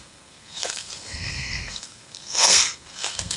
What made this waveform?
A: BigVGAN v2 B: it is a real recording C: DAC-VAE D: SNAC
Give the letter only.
D